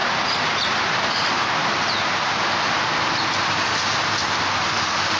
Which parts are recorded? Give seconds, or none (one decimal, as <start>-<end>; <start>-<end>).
0.0-5.2